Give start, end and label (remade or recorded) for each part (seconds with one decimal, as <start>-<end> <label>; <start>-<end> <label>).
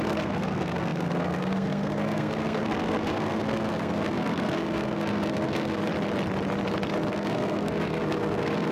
0.0-5.8 remade; 5.8-7.1 recorded; 7.1-8.7 remade